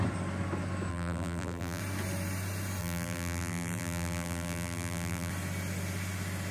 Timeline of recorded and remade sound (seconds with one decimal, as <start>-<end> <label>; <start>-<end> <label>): 0.0-0.9 recorded; 0.9-1.8 remade; 1.8-2.8 recorded; 2.8-5.3 remade; 5.3-6.5 recorded